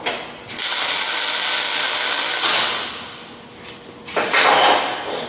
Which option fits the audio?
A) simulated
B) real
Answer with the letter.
B